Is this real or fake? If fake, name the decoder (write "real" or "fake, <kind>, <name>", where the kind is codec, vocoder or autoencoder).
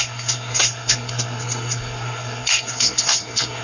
fake, codec, SNAC